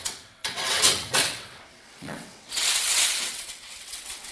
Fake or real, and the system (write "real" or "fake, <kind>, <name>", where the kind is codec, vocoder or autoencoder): fake, vocoder, WaveNeXt